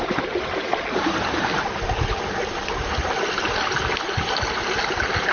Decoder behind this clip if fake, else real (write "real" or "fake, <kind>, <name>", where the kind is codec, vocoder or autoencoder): real